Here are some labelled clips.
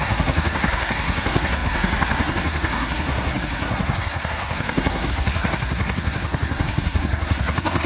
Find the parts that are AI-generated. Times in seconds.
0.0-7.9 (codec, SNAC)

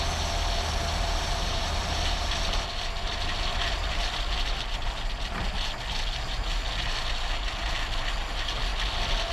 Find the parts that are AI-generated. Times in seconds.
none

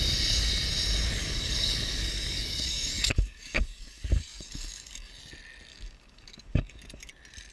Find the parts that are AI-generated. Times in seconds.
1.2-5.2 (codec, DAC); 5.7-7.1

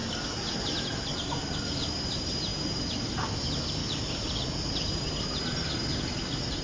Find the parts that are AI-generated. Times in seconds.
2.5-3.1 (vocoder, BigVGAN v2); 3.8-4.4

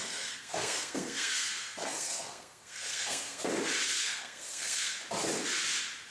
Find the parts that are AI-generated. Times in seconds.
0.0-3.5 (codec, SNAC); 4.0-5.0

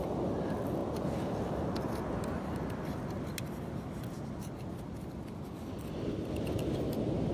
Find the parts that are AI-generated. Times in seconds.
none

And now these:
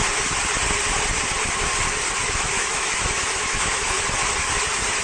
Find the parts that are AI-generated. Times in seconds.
2.2-4.0 (autoencoder, DAC-VAE)